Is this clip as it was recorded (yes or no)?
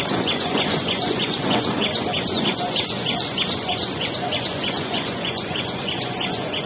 no